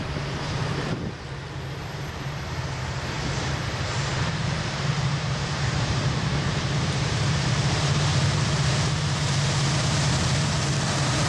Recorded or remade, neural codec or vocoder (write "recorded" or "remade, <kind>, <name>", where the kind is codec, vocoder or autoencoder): remade, vocoder, BigVGAN v2